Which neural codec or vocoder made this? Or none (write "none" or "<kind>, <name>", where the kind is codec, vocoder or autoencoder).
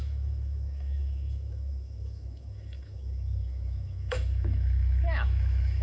autoencoder, DAC-VAE